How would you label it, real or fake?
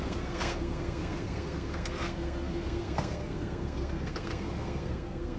fake